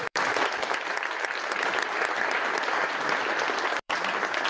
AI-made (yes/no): yes